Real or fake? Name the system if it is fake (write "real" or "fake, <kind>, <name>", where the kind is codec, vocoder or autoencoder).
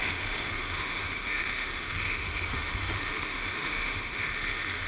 fake, autoencoder, DAC-VAE